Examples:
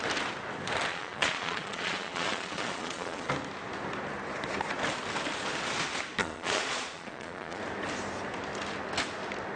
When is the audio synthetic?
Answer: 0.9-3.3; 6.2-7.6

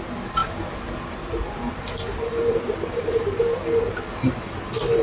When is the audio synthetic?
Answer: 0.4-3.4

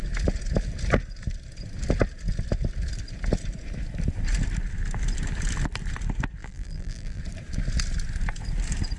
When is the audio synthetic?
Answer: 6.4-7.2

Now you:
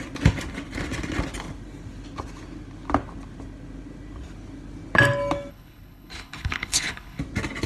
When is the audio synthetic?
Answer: 5.5-7.2

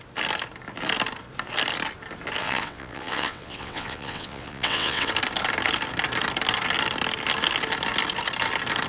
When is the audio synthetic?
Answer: 2.4-5.1

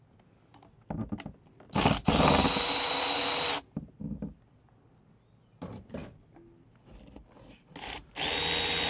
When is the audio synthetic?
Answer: 2.0-3.9

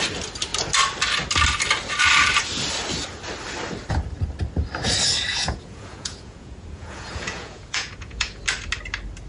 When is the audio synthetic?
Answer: 5.3-8.4